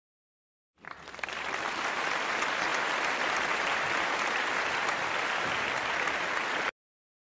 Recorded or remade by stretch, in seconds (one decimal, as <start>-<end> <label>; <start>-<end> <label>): 0.0-0.4 recorded; 0.4-1.9 remade; 1.9-2.7 recorded; 2.7-5.5 remade; 5.5-7.4 recorded